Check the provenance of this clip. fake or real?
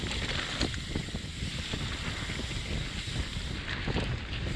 real